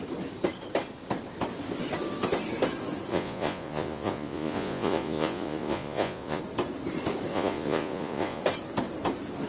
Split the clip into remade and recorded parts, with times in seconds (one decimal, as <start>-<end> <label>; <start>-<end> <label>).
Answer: 0.0-3.1 recorded; 3.1-6.4 remade; 6.4-7.3 recorded; 7.3-8.4 remade; 8.4-9.5 recorded